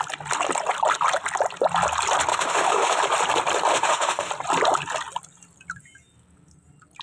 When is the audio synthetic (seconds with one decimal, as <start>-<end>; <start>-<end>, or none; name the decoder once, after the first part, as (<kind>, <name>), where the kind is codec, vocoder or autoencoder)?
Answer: 2.3-3.0 (autoencoder, DAC-VAE); 3.7-4.3